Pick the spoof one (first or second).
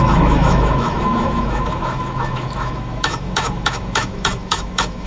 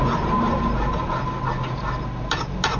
first